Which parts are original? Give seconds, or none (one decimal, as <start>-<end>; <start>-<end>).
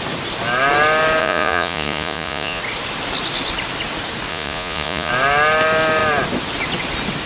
0.0-1.2; 2.6-4.3; 5.1-7.3